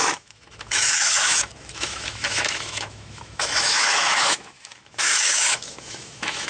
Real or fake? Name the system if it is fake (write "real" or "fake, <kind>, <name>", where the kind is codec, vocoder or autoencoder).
fake, autoencoder, DAC-VAE